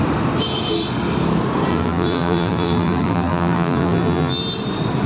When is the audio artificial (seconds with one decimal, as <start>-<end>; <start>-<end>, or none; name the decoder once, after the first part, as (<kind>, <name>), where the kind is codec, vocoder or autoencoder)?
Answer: 1.7-4.4 (vocoder, BigVGAN v2)